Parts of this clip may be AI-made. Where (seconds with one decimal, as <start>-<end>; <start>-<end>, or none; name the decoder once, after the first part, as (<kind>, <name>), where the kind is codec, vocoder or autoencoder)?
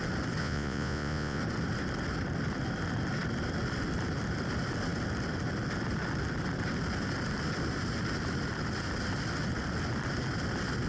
0.4-1.4 (vocoder, Vocos)